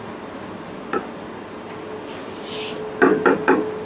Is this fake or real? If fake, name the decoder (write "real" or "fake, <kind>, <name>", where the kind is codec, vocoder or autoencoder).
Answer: real